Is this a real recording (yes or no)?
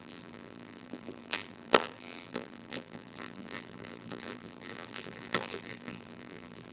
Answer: no